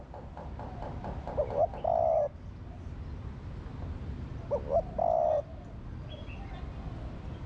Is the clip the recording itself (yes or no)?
yes